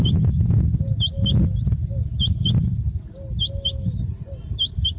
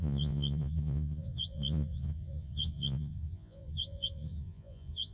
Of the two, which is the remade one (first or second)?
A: second